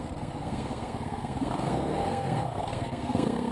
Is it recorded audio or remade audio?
remade